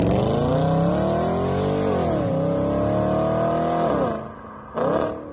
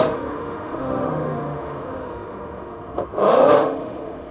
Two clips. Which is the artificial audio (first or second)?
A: second